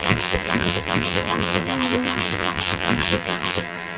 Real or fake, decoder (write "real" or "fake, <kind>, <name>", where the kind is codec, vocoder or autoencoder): fake, vocoder, BigVGAN v2